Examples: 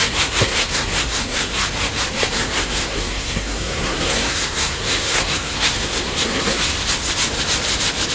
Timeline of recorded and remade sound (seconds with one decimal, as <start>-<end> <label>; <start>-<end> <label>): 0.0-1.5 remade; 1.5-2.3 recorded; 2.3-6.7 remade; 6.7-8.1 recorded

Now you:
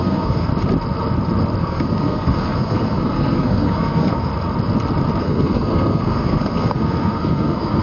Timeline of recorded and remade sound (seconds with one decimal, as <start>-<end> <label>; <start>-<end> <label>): 0.0-0.5 remade; 0.5-1.6 recorded; 1.6-4.3 remade; 4.3-5.2 recorded; 5.2-7.8 remade

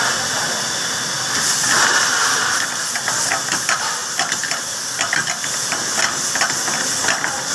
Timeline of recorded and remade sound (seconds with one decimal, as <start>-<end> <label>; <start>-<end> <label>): 0.0-7.5 recorded

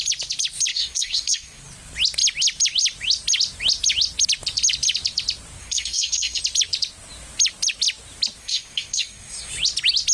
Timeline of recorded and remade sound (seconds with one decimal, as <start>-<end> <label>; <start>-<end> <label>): 0.0-0.7 recorded; 0.7-1.6 remade; 1.6-5.6 recorded; 5.6-6.4 remade; 6.4-8.4 recorded; 8.4-9.5 remade; 9.5-10.1 recorded

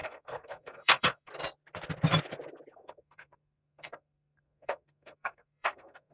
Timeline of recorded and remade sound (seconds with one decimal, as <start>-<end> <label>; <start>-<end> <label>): 0.0-1.3 remade; 1.3-2.7 recorded; 2.7-6.1 remade

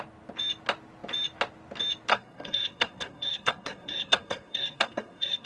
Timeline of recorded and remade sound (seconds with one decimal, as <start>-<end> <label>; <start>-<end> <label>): 0.0-2.1 recorded; 2.1-5.5 remade

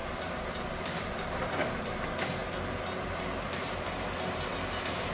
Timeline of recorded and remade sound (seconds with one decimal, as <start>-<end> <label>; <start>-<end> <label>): 0.0-5.1 recorded

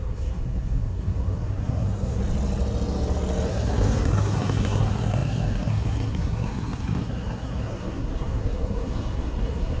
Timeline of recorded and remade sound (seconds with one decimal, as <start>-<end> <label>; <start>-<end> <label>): 0.0-2.2 remade; 2.2-3.5 recorded; 3.5-9.8 remade